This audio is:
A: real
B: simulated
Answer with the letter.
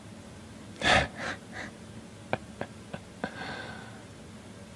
A